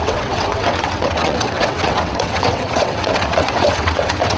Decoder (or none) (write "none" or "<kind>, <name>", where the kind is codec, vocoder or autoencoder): vocoder, WaveNeXt